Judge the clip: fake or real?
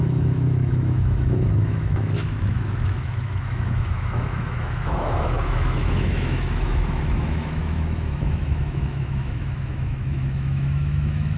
fake